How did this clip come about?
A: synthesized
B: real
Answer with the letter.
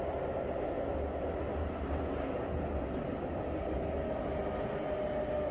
B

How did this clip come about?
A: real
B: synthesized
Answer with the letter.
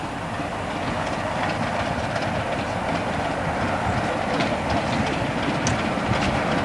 A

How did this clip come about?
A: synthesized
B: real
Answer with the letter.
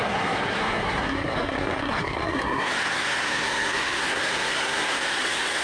A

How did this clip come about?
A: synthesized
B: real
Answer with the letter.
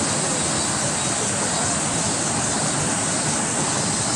B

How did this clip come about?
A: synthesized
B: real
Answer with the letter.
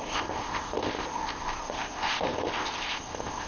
A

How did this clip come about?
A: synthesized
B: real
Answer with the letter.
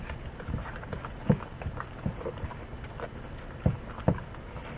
B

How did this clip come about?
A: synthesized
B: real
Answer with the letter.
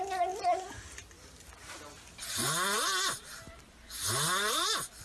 B